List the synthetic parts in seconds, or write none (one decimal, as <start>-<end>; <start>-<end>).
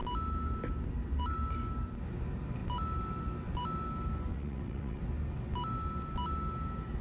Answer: 4.3-5.0